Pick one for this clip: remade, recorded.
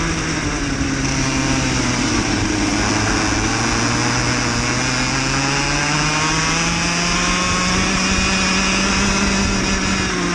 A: recorded